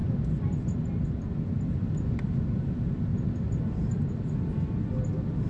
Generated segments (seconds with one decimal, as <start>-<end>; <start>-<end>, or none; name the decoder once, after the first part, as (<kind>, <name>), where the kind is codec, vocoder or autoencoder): 3.1-4.1 (vocoder, BigVGAN v2)